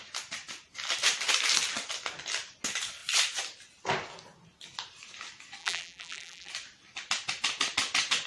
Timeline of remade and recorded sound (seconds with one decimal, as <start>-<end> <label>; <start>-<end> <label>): 0.0-5.6 recorded; 5.6-6.5 remade; 6.5-8.3 recorded